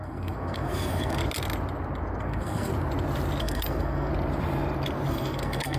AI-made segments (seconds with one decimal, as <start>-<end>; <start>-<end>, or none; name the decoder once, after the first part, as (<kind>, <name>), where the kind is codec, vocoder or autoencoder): 0.0-1.2 (codec, SNAC); 2.2-2.7; 3.4-4.1; 5.1-5.8